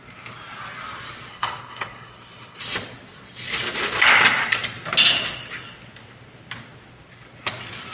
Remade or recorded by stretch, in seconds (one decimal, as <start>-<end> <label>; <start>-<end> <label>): 0.0-1.3 recorded; 1.3-2.6 remade; 2.6-7.9 recorded